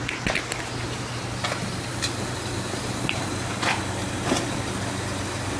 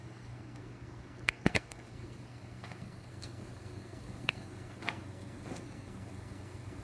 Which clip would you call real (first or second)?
first